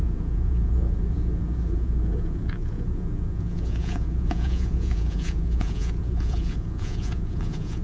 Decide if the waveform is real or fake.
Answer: fake